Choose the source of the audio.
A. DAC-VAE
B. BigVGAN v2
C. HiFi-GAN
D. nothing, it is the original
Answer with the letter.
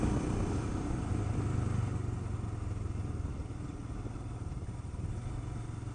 D